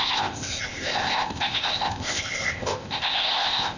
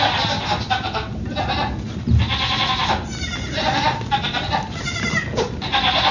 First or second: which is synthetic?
first